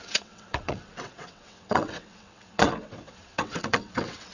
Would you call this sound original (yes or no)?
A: no